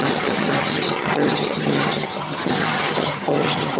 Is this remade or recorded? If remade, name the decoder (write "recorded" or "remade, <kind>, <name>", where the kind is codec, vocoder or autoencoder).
remade, vocoder, HiFi-GAN